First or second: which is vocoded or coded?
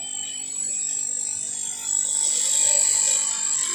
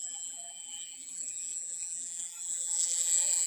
second